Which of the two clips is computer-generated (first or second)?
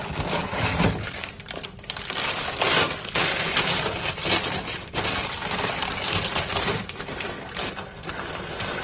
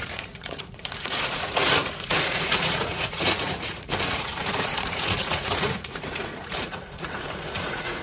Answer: second